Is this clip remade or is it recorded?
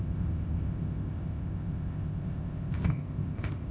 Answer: remade